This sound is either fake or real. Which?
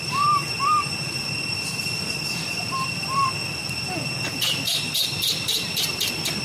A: fake